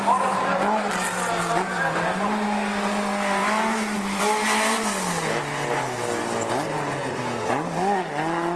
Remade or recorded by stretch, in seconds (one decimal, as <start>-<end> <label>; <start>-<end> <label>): 0.0-8.6 recorded